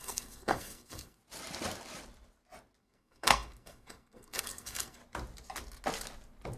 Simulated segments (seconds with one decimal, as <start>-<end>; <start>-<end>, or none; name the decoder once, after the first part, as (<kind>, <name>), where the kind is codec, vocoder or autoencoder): 0.0-1.2 (codec, SNAC); 2.8-5.0